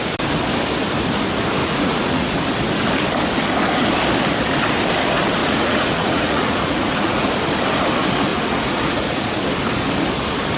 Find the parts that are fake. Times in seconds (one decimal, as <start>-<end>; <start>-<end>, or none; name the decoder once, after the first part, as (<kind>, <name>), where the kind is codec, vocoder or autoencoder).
1.6-2.4 (vocoder, Vocos); 5.4-7.3; 8.3-9.4